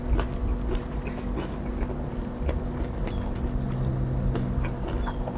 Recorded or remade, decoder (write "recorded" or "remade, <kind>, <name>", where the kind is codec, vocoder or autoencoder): recorded